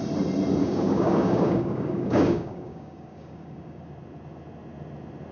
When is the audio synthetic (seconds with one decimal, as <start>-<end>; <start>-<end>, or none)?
0.6-3.8